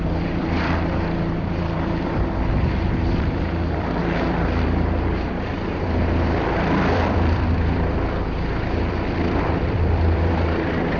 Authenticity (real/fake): fake